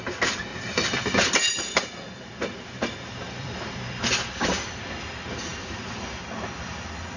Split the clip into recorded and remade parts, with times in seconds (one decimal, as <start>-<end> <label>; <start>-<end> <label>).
0.0-0.5 recorded; 0.5-4.8 remade; 4.8-5.5 recorded; 5.5-7.2 remade